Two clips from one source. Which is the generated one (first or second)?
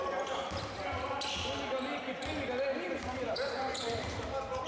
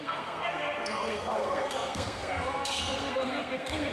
second